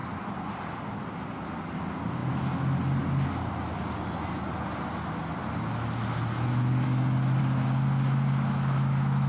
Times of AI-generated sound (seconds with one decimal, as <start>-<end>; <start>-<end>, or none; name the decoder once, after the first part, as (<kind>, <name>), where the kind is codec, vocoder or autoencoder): none